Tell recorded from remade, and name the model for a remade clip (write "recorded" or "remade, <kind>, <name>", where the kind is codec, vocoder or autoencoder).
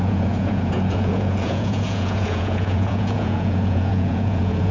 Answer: remade, vocoder, Vocos